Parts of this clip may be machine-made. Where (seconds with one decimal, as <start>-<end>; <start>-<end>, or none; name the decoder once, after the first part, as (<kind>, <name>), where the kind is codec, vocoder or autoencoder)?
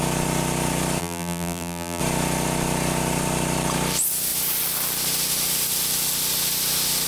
1.0-2.0 (vocoder, BigVGAN v2)